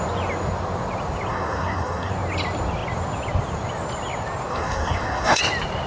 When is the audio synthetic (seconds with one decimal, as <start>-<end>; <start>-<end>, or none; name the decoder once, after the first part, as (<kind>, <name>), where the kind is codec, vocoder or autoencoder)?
1.3-2.1 (codec, SNAC); 4.5-5.4